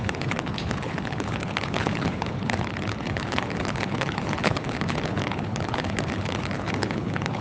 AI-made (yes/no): yes